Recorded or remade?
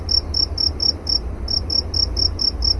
recorded